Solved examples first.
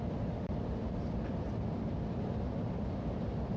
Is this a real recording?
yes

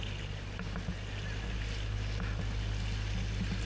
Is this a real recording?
yes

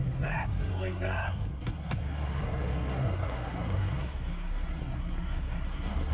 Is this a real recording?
no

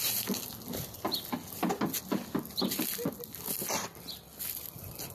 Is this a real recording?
yes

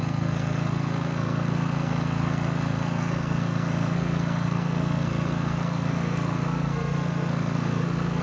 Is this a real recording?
no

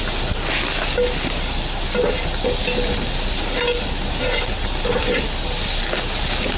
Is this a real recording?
yes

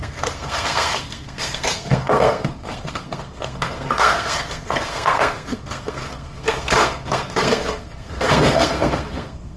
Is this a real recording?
no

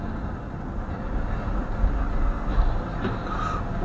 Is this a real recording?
yes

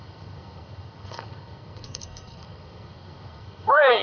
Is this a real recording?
no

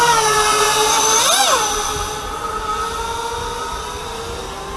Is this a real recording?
yes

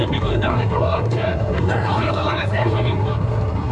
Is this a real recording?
no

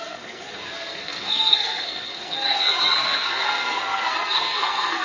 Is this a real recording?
no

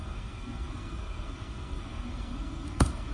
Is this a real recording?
no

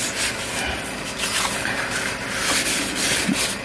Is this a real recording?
yes